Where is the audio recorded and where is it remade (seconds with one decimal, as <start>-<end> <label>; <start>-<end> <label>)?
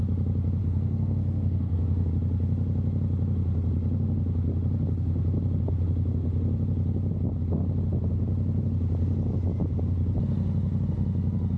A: 0.0-0.6 recorded; 0.6-2.1 remade; 2.1-11.6 recorded